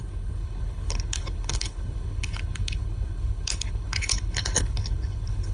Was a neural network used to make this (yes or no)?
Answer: yes